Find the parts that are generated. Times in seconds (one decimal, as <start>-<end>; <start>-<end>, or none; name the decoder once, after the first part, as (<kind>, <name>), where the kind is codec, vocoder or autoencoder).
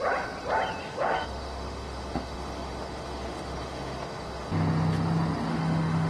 0.8-4.5 (autoencoder, DAC-VAE); 5.5-6.1